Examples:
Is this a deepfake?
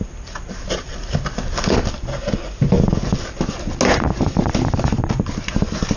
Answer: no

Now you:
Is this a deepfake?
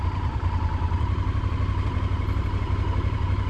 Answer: yes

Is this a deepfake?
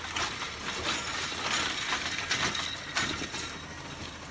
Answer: no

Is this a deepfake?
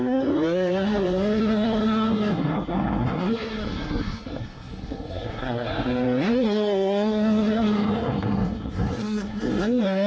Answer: yes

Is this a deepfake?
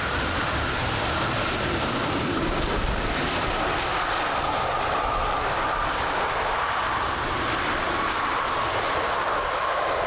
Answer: no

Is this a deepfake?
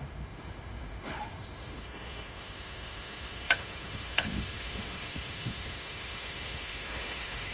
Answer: yes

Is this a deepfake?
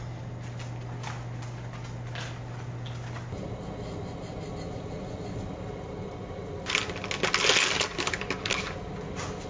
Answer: no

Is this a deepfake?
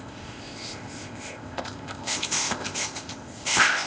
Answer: yes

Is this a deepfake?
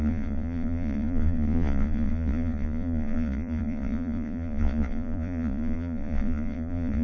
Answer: yes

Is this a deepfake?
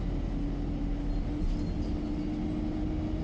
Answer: no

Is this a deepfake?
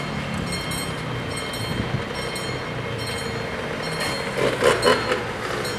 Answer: no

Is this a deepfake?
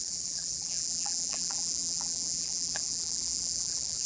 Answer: yes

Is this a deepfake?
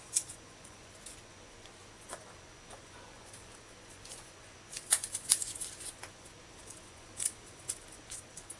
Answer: yes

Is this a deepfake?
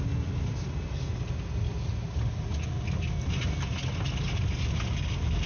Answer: no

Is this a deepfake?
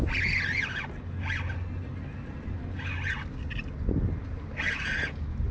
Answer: no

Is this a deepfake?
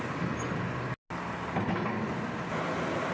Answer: no